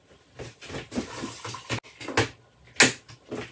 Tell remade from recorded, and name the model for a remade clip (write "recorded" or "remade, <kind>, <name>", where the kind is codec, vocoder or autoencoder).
recorded